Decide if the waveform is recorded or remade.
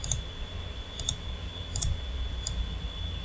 recorded